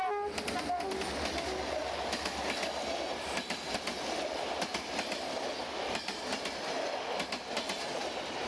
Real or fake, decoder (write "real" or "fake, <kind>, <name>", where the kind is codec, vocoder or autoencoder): real